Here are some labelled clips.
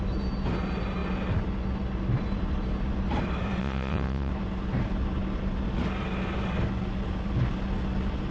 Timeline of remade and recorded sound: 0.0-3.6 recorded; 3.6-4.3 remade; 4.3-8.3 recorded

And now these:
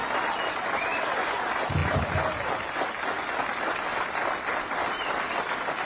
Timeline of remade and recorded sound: 0.0-5.9 recorded

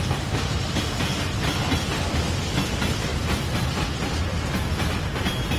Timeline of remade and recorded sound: 0.0-5.6 recorded

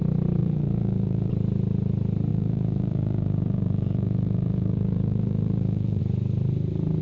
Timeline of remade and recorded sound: 0.0-0.4 recorded; 0.4-1.3 remade; 1.3-2.3 recorded; 2.3-6.0 remade; 6.0-7.0 recorded

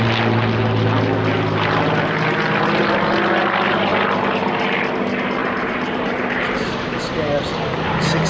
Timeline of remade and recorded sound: 0.0-5.4 recorded; 5.4-7.1 remade; 7.1-8.3 recorded

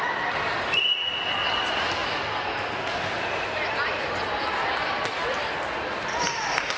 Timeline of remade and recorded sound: 0.0-6.8 recorded

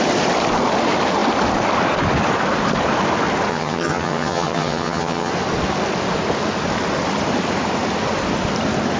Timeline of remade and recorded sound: 0.0-3.5 recorded; 3.5-5.3 remade; 5.3-9.0 recorded